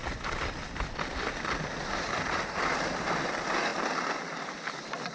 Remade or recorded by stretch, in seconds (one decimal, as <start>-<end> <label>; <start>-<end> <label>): 0.0-5.1 recorded